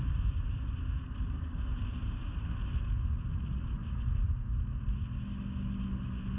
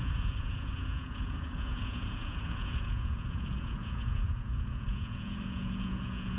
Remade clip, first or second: second